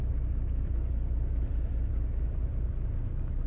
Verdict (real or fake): real